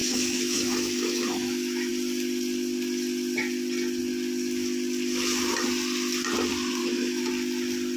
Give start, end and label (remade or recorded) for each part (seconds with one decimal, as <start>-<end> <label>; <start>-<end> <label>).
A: 0.0-1.9 remade; 1.9-6.8 recorded; 6.8-7.3 remade; 7.3-8.0 recorded